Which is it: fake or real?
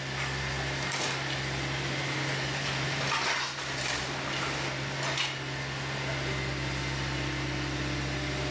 real